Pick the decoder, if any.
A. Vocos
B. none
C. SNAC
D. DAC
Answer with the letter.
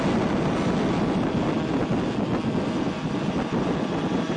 B